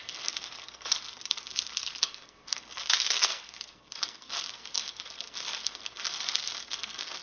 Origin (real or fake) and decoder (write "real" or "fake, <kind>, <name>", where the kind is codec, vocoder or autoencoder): fake, codec, SNAC